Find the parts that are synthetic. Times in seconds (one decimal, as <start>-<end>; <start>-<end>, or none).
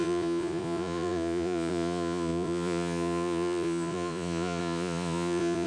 0.0-5.7